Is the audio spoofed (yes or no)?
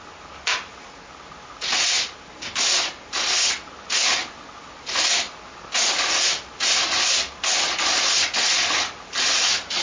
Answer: no